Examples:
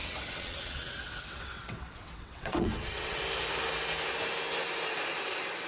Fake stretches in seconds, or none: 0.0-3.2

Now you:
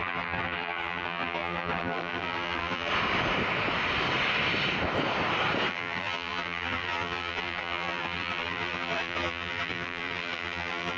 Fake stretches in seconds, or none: 0.0-2.9; 5.7-11.0

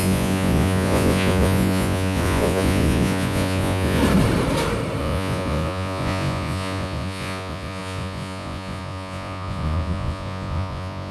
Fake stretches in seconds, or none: 0.0-4.0; 5.0-11.1

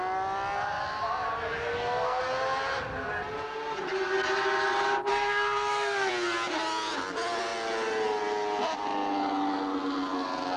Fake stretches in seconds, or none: 1.7-2.2; 5.1-6.1

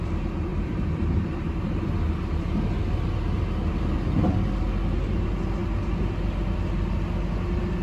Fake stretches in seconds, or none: 0.5-1.5

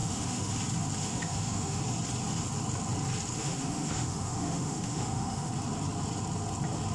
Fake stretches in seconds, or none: 0.0-0.5; 1.0-1.8; 3.4-5.5

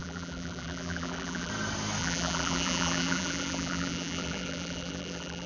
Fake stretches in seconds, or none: 0.0-1.5; 2.0-5.5

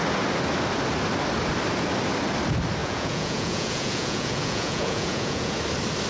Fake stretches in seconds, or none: 2.8-5.5